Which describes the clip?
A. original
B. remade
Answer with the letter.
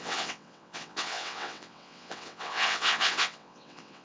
B